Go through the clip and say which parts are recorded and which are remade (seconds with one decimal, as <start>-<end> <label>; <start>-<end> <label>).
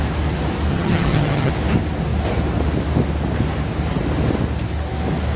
0.0-0.7 recorded; 0.7-1.5 remade; 1.5-5.4 recorded